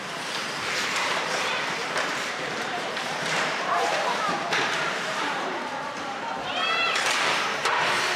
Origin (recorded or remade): remade